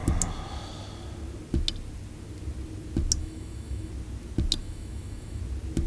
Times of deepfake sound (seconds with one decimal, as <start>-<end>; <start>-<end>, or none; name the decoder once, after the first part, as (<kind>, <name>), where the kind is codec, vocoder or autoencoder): 3.2-3.9 (autoencoder, DAC-VAE); 4.6-5.4

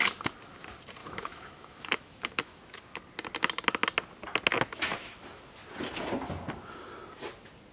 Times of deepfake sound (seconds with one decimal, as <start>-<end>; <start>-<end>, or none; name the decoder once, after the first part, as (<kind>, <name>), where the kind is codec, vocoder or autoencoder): 1.0-3.0 (autoencoder, DAC-VAE)

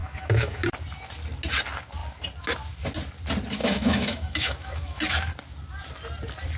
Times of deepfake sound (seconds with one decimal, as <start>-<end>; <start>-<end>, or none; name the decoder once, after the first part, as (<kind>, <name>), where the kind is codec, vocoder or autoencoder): 0.0-0.6 (autoencoder, DAC-VAE); 3.6-5.0